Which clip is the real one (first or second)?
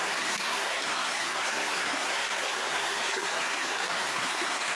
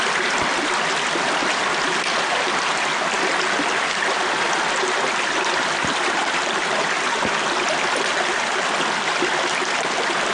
second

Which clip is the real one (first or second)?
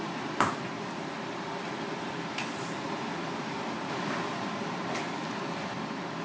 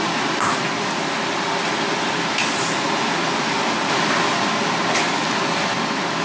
second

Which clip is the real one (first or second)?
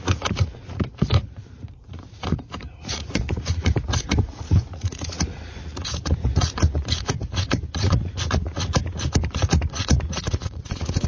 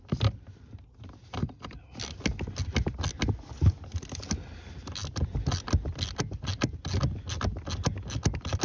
second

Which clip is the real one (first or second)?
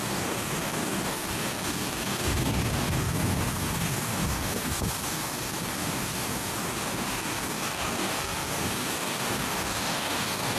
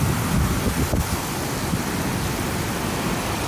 second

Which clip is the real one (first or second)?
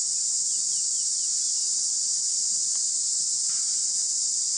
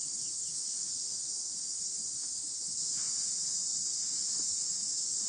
first